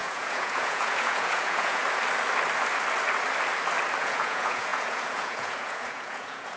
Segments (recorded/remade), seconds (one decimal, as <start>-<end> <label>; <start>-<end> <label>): 0.0-1.8 remade; 1.8-4.0 recorded; 4.0-6.6 remade